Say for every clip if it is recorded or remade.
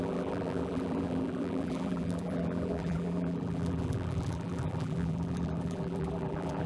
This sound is remade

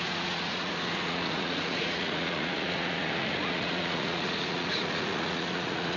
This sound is remade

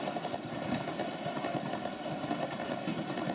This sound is recorded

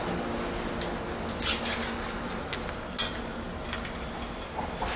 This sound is recorded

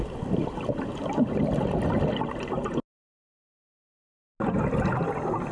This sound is recorded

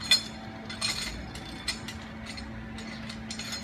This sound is recorded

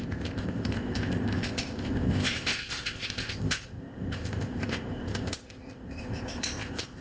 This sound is remade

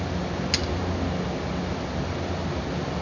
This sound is recorded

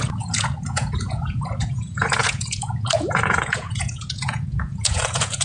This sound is remade